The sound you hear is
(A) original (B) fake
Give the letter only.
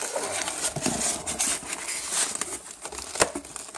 A